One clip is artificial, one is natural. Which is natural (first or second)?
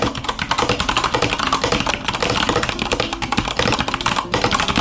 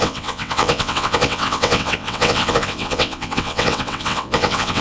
first